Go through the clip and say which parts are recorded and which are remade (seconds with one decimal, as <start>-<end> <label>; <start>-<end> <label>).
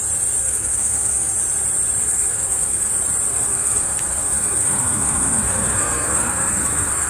0.0-0.4 recorded; 0.4-1.3 remade; 1.3-2.0 recorded; 2.0-2.9 remade; 2.9-3.3 recorded; 3.3-7.1 remade